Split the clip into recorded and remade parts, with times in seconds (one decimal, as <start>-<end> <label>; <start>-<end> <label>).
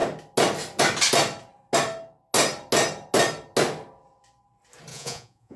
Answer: 0.0-4.9 recorded; 4.9-5.6 remade